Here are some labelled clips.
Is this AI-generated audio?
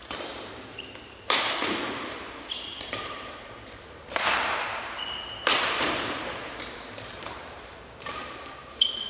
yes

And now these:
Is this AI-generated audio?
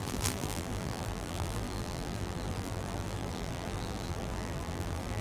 yes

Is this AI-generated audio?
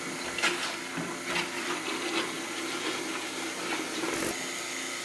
no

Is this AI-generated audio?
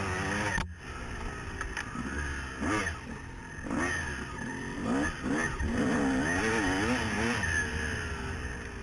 no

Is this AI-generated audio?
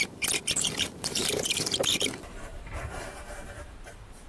yes